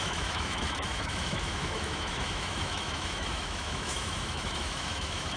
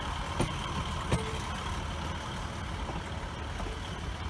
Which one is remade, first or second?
first